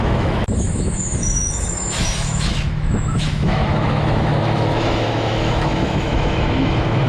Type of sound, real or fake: fake